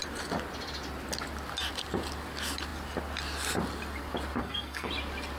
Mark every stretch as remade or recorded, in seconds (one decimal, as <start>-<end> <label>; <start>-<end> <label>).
0.0-4.4 recorded; 4.4-4.9 remade; 4.9-5.4 recorded